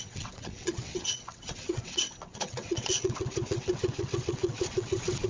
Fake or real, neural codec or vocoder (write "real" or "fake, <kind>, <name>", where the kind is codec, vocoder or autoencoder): fake, vocoder, WaveNeXt